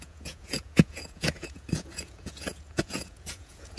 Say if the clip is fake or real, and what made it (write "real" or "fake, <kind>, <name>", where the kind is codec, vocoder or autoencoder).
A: fake, vocoder, Vocos